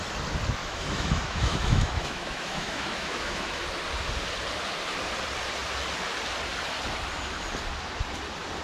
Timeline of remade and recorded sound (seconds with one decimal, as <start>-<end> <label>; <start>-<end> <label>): 0.0-0.6 recorded; 0.6-3.6 remade; 3.6-8.6 recorded